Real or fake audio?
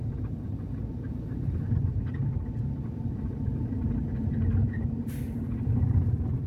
fake